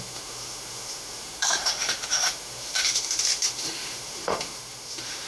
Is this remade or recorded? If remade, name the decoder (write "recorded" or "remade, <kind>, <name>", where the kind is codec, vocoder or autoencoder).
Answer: remade, autoencoder, DAC-VAE